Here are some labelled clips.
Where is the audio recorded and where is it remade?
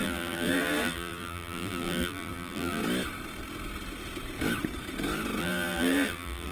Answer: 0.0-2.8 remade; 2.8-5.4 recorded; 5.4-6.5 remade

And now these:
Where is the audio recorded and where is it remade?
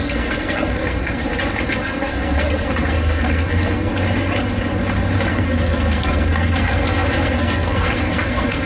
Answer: 0.0-1.2 remade; 1.2-1.8 recorded; 1.8-3.9 remade; 3.9-5.3 recorded; 5.3-8.7 remade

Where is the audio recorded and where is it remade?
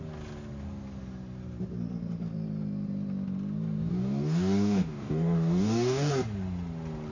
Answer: 0.0-3.9 recorded; 3.9-6.1 remade; 6.1-7.1 recorded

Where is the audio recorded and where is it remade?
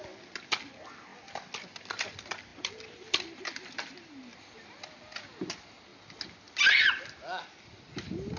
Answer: 0.0-2.5 recorded; 2.5-4.3 remade; 4.3-8.4 recorded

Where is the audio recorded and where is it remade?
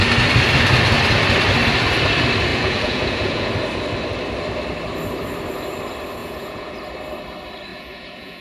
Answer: 0.0-2.5 recorded; 2.5-3.5 remade; 3.5-6.2 recorded; 6.2-6.7 remade; 6.7-7.7 recorded; 7.7-8.4 remade